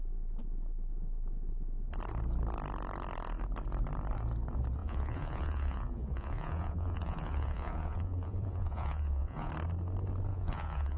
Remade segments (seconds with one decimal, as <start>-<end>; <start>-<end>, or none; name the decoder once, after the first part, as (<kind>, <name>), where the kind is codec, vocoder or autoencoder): 4.8-9.5 (vocoder, Vocos); 10.3-11.0